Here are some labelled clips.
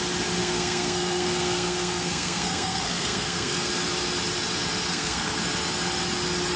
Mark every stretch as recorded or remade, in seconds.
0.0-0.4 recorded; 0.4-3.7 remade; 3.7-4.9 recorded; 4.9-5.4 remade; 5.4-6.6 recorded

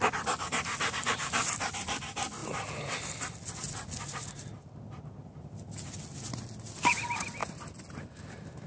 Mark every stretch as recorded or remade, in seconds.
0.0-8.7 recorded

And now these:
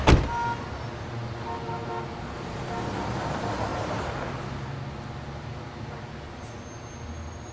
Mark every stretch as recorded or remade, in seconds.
0.0-7.5 recorded

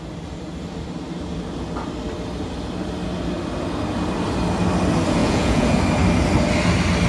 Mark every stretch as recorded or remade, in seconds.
0.0-5.2 recorded; 5.2-5.8 remade; 5.8-7.1 recorded

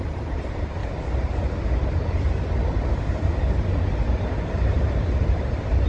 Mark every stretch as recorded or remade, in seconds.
0.0-0.8 remade; 0.8-4.3 recorded; 4.3-5.9 remade

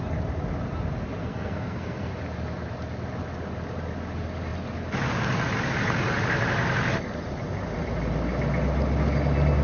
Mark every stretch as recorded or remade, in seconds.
0.0-1.2 recorded; 1.2-2.1 remade; 2.1-9.6 recorded